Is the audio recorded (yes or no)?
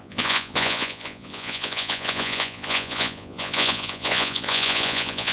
no